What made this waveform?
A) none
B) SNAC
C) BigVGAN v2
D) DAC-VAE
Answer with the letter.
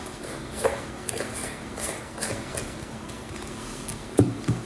B